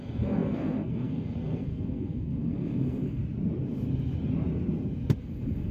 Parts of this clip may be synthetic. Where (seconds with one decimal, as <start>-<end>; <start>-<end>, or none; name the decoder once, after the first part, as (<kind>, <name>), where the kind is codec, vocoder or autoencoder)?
0.0-3.2 (codec, SNAC); 5.2-5.7